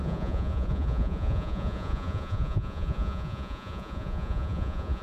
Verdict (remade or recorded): remade